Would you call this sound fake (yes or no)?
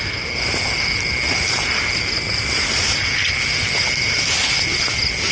no